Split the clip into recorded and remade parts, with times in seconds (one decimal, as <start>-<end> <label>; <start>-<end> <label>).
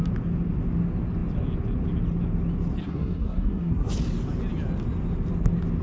0.0-2.8 recorded; 2.8-3.9 remade; 3.9-5.8 recorded